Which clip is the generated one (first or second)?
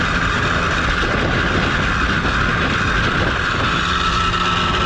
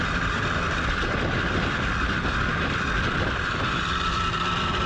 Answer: second